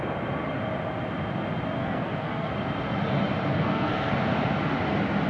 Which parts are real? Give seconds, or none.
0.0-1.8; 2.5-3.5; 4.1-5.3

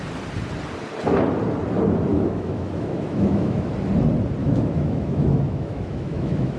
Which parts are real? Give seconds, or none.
0.0-2.1; 3.7-4.4

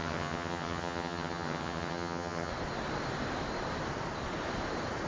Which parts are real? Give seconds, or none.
2.5-5.1

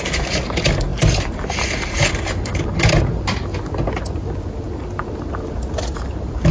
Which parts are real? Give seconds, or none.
0.0-6.5

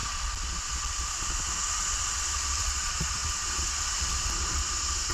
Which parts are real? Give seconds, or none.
0.0-5.1

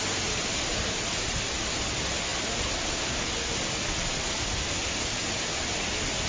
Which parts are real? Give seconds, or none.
0.0-6.3